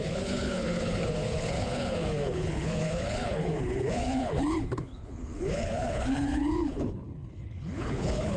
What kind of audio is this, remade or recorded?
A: remade